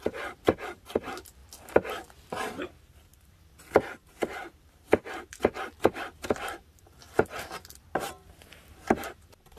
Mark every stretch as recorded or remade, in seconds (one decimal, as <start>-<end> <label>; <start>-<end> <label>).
0.0-1.4 remade; 1.4-1.9 recorded; 1.9-3.1 remade; 3.1-4.0 recorded; 4.0-7.0 remade; 7.0-7.9 recorded; 7.9-9.6 remade